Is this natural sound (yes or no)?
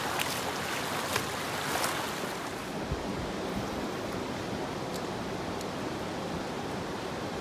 yes